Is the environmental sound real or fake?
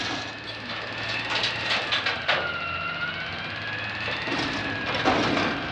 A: real